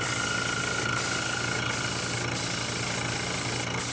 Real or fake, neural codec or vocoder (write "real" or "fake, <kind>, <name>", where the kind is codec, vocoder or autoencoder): real